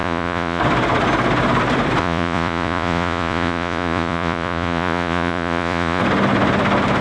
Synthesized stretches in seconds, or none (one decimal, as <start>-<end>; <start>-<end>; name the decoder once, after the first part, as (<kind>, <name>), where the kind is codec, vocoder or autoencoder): 0.0-0.6 (vocoder, Vocos); 2.0-6.0